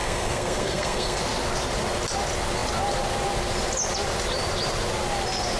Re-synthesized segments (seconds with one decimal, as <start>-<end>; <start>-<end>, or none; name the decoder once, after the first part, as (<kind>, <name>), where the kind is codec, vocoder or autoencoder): 0.0-1.2 (codec, SNAC)